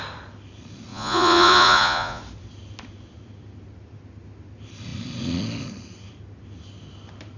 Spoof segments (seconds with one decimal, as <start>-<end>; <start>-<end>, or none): 0.9-2.2

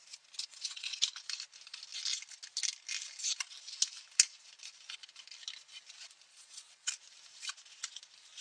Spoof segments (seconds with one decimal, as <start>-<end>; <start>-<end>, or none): 0.4-1.0; 6.3-6.9

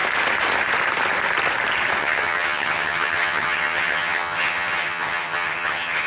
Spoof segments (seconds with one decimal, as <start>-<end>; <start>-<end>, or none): 2.0-6.1

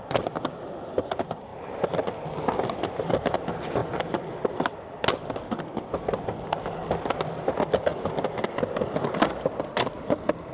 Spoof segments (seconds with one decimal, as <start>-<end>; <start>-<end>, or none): none

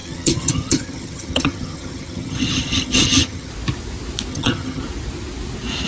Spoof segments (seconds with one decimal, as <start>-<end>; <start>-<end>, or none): 0.0-3.5; 4.3-4.8

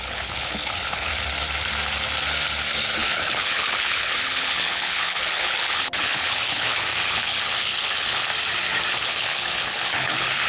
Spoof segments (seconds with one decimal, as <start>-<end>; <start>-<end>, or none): 0.0-1.1; 3.0-8.3; 8.9-10.5